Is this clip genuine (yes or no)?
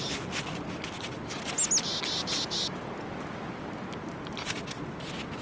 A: yes